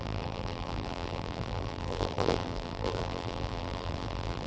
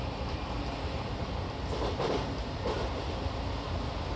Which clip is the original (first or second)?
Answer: second